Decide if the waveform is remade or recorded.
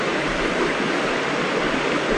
recorded